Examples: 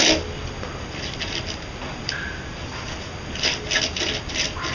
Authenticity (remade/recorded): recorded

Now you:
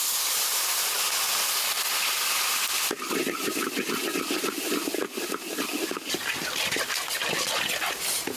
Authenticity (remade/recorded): recorded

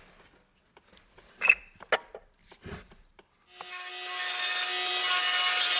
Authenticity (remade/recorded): recorded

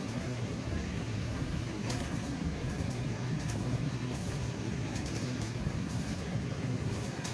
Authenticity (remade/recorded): remade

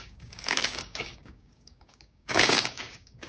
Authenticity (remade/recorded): remade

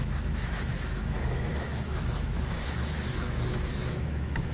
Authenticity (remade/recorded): remade